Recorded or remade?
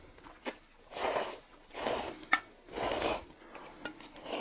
recorded